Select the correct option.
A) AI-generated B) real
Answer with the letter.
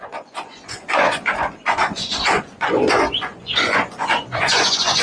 A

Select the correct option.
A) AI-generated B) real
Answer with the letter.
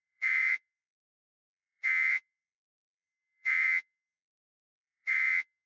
A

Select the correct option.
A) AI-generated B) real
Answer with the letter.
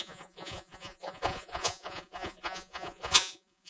A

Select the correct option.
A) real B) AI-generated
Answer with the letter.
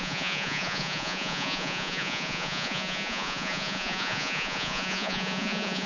B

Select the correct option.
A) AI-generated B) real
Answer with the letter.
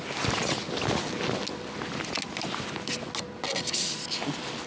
B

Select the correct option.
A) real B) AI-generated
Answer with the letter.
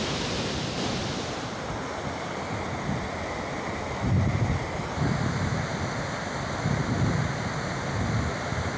A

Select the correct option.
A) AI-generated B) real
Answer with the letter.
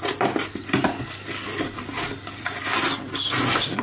B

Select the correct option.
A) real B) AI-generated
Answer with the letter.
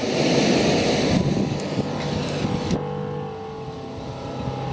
A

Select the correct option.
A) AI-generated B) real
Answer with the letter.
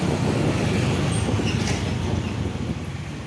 B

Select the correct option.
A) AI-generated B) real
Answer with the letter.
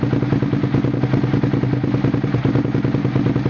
B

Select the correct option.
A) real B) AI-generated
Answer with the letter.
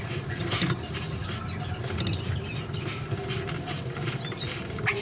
A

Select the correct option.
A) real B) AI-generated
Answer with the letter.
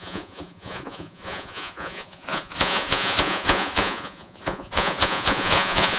B